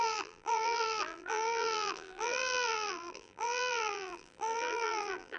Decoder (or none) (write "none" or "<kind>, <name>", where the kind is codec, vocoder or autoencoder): vocoder, BigVGAN v2